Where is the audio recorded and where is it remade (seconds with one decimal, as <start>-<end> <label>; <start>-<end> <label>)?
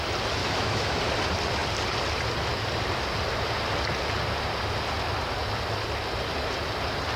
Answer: 0.0-0.4 recorded; 0.4-1.0 remade; 1.0-7.2 recorded